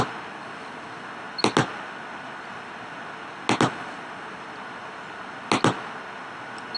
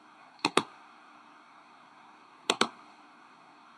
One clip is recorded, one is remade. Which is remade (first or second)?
second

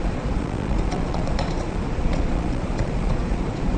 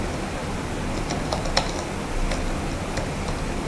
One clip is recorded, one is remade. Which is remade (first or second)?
first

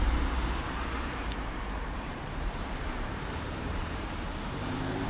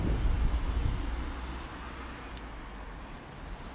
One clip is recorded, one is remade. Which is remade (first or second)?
first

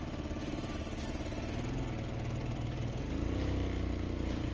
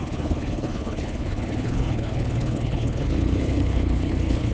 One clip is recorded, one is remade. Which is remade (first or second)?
second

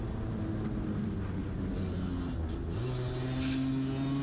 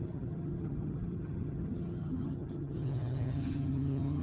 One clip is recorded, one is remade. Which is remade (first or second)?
second